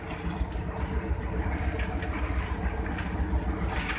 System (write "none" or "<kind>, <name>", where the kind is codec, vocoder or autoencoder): none